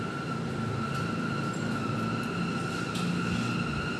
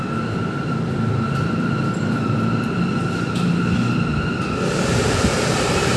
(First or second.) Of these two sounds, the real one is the first